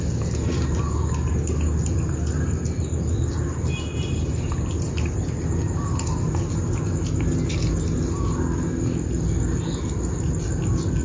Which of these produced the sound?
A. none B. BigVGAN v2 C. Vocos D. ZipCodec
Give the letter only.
A